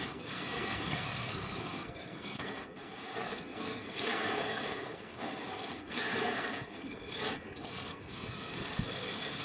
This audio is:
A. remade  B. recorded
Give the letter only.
A